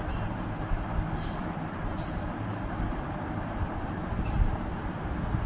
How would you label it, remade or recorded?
recorded